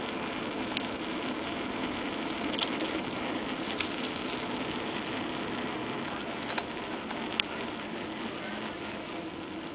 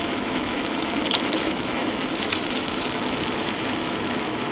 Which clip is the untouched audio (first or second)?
first